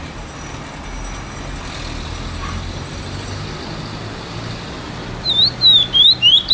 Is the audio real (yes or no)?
yes